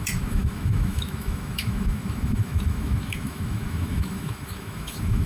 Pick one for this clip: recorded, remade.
remade